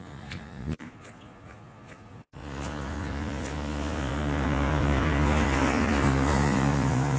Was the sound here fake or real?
fake